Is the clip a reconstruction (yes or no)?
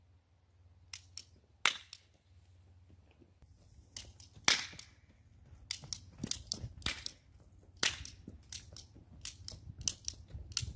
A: no